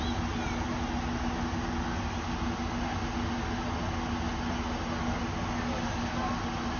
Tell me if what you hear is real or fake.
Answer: real